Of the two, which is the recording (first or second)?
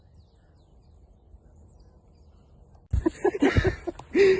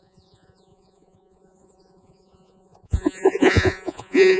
first